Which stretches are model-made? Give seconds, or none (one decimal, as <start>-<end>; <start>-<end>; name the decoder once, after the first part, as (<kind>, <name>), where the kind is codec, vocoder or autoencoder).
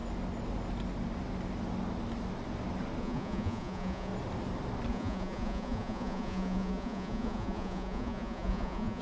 3.0-4.1 (vocoder, Vocos); 4.9-9.0